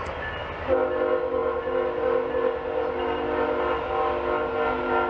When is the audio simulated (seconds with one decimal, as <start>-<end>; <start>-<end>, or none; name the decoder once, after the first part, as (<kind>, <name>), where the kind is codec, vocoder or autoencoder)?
none